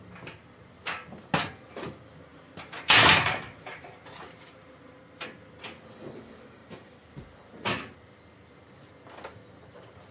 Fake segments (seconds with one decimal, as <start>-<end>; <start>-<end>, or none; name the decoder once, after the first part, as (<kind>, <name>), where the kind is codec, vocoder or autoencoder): 2.3-5.0 (vocoder, BigVGAN v2); 6.6-7.3